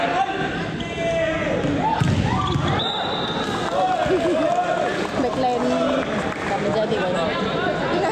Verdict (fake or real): real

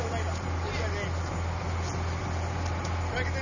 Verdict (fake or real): real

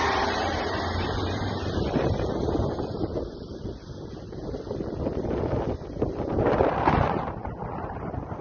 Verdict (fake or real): fake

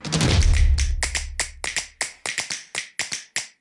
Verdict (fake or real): real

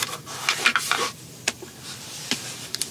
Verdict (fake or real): fake